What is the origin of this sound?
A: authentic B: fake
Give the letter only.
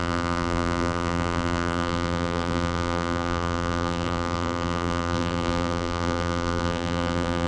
B